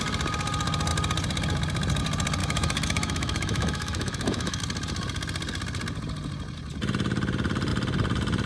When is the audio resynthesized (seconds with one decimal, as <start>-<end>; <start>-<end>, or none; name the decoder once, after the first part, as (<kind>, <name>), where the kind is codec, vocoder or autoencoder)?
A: 2.4-4.6 (autoencoder, DAC-VAE)